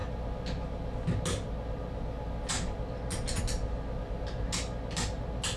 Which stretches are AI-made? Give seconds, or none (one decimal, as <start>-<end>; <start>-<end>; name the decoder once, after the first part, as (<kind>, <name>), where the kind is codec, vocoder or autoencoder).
none